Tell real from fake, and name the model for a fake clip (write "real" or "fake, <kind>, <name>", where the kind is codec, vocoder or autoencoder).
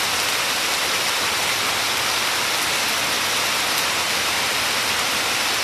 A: real